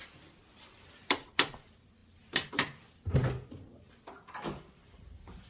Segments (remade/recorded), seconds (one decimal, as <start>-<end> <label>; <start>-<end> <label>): 0.0-5.5 recorded